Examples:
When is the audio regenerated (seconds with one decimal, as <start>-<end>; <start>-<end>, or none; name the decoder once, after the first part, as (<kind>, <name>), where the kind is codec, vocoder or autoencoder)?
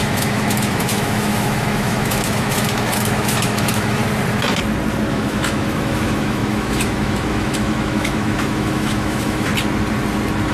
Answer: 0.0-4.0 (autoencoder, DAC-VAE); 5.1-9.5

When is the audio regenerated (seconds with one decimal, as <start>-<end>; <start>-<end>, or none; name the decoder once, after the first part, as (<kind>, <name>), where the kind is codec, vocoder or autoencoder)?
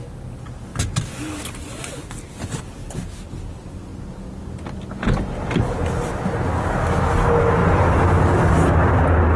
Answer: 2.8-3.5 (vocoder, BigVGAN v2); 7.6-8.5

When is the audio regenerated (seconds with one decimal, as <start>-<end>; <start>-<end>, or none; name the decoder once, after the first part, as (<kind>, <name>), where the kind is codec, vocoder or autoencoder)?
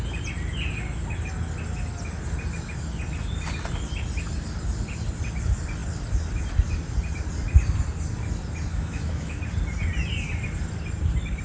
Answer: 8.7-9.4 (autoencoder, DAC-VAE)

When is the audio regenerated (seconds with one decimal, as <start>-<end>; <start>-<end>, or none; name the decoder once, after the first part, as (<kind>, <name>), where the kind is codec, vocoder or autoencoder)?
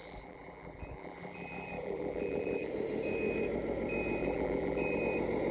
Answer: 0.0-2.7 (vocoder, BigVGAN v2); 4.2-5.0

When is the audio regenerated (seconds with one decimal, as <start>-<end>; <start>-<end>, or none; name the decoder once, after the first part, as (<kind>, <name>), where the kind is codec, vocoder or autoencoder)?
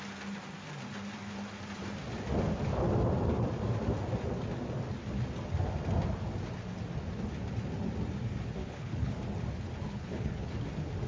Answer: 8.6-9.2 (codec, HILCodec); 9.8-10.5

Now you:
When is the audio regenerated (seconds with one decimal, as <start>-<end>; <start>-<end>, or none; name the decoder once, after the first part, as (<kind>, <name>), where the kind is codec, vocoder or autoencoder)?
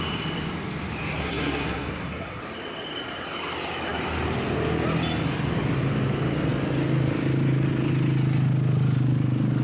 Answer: 1.2-2.4 (codec, SNAC)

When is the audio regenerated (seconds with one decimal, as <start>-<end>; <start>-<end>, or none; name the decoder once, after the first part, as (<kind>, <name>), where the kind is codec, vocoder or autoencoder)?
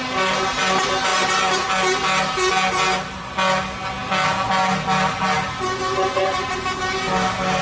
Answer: none